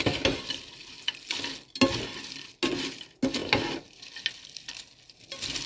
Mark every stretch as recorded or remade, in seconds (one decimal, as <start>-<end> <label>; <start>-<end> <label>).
0.0-5.7 recorded